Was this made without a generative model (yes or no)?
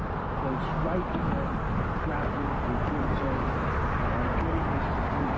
yes